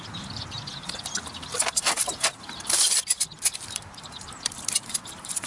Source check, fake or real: fake